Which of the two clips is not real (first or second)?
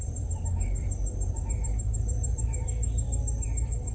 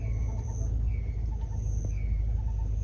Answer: first